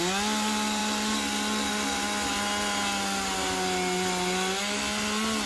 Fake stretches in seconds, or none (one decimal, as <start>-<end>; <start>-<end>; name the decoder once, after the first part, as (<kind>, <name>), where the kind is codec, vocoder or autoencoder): none